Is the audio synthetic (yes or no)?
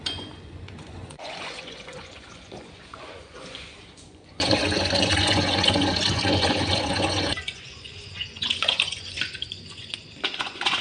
yes